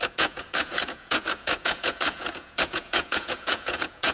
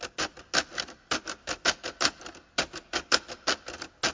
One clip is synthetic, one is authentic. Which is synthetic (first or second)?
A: first